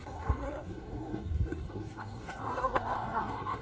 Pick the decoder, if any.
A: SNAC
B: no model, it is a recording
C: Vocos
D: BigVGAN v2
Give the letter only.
A